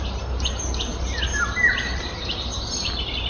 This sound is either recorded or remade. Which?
recorded